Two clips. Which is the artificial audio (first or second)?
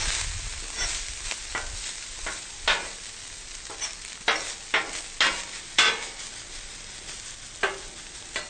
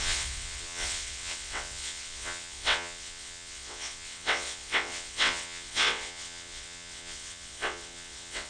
second